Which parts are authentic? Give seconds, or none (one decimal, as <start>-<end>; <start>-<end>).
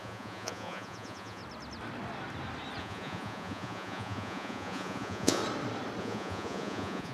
1.4-2.8; 5.4-6.0